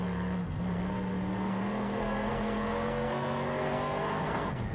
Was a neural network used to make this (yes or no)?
yes